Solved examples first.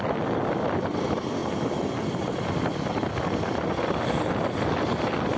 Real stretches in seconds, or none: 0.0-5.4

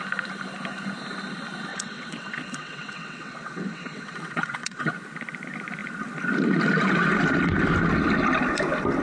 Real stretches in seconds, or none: 0.0-1.7; 4.9-9.0

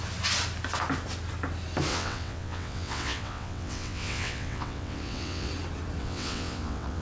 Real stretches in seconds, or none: 0.0-1.9; 5.5-6.0

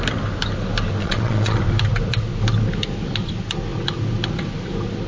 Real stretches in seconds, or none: 0.0-1.0; 1.6-5.1